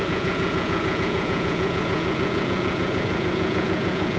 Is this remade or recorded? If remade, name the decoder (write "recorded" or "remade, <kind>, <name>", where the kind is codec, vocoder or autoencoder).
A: remade, vocoder, Vocos